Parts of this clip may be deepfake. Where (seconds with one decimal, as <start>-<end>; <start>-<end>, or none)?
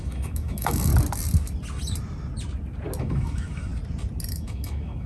0.0-0.9; 3.0-3.7; 4.3-5.1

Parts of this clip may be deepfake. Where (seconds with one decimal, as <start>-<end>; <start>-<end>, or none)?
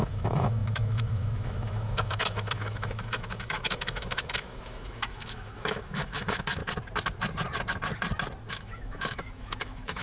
0.0-6.6; 8.5-10.0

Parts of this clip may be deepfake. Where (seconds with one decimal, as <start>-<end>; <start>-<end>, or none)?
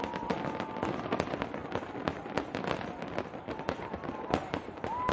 none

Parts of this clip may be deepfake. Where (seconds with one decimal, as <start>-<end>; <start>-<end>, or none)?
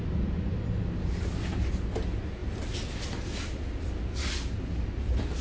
none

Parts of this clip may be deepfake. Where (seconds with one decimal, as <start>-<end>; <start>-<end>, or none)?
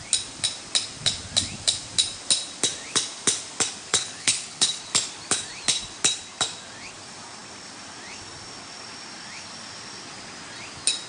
3.9-4.8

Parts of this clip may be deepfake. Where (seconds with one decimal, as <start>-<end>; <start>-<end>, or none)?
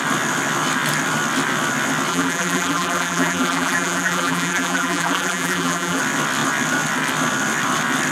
2.1-6.0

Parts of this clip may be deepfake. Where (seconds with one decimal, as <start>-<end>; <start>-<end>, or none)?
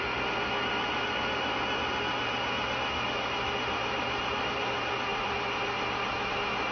none